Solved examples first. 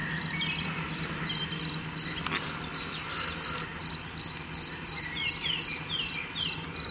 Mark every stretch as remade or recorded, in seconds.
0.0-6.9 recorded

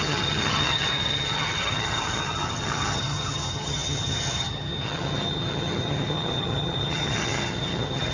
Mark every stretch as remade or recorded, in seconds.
0.0-8.1 remade

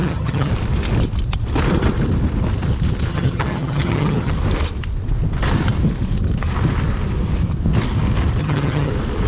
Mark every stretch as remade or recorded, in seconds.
0.0-0.5 remade; 0.5-3.1 recorded; 3.1-4.3 remade; 4.3-8.4 recorded; 8.4-8.9 remade; 8.9-9.3 recorded

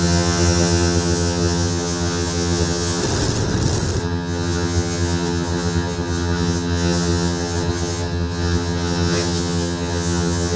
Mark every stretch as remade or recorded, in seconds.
0.0-3.0 remade; 3.0-4.0 recorded; 4.0-10.6 remade

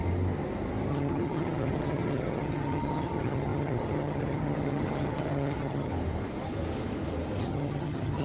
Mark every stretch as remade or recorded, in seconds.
0.0-0.9 recorded; 0.9-5.9 remade; 5.9-7.4 recorded; 7.4-8.2 remade

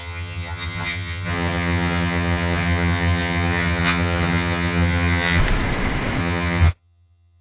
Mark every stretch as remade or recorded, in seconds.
0.0-5.4 remade; 5.4-6.2 recorded; 6.2-7.4 remade